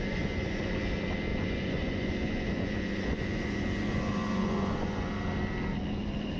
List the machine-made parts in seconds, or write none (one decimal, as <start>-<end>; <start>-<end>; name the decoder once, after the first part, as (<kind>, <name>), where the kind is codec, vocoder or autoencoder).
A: 0.0-0.7 (vocoder, Vocos); 1.3-5.1